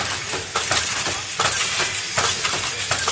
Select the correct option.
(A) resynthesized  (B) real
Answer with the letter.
B